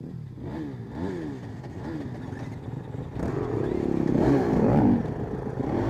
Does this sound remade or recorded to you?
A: recorded